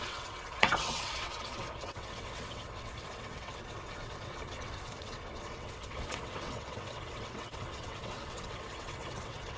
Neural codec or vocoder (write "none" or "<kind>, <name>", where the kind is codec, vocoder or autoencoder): vocoder, WaveNeXt